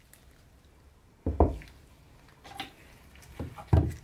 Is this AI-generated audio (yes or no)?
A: no